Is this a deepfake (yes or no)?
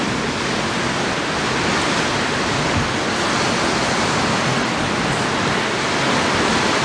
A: no